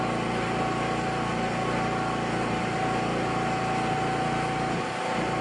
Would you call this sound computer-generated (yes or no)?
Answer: no